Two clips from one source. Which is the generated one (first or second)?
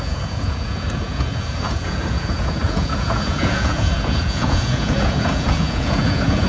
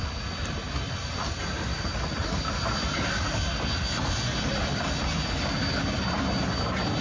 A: first